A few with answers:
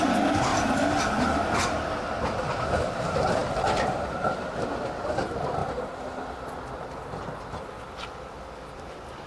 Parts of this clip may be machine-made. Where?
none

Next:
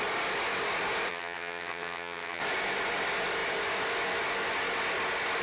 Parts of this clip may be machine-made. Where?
1.1-2.4 (vocoder, HiFi-GAN)